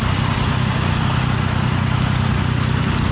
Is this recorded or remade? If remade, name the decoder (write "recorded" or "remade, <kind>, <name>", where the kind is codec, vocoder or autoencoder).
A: recorded